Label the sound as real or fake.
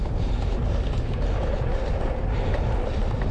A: real